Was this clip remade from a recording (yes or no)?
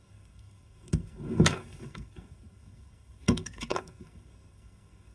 yes